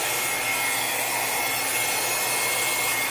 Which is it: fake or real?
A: real